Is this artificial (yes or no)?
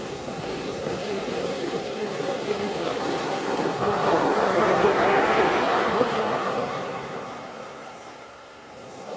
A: yes